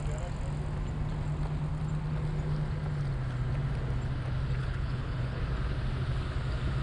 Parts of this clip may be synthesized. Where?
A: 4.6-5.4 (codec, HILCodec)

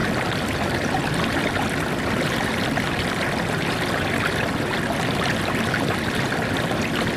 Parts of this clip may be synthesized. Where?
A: none

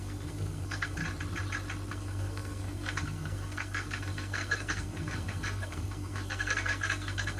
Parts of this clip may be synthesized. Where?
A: 0.0-1.0 (codec, SNAC); 1.9-7.4